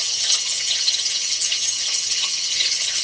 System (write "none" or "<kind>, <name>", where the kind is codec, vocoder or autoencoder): vocoder, HiFi-GAN